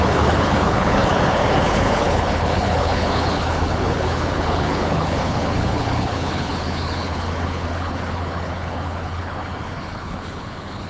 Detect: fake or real fake